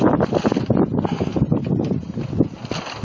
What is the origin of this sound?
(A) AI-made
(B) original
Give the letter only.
B